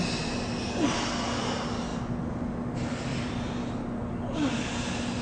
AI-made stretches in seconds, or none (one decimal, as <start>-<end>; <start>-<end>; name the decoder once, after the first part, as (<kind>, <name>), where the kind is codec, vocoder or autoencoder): none